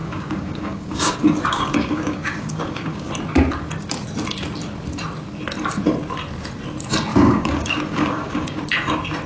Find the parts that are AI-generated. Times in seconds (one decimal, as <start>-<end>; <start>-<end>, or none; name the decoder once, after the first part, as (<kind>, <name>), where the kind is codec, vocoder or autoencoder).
0.0-3.1 (codec, DAC); 7.1-8.6